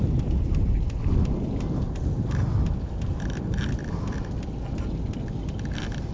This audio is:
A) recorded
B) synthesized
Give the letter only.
A